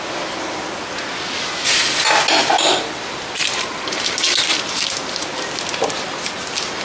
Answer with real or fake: real